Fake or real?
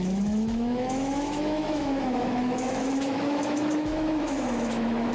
fake